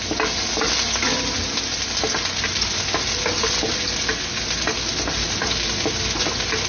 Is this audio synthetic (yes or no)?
no